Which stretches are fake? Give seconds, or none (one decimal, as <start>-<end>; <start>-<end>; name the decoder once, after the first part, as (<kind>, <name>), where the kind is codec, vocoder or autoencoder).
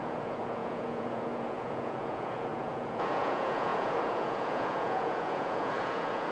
0.0-6.3 (vocoder, Vocos)